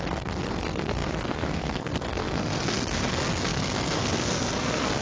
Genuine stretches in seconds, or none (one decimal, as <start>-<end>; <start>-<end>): none